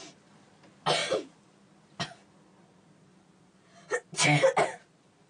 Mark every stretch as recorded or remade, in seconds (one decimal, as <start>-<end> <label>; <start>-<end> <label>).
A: 0.0-1.0 recorded; 1.0-1.6 remade; 1.6-3.1 recorded; 3.1-4.0 remade; 4.0-5.3 recorded